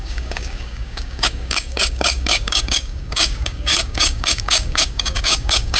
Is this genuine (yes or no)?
no